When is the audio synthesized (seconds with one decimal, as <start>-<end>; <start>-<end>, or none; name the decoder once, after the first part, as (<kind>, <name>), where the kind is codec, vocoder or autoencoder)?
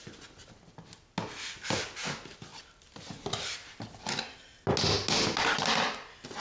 none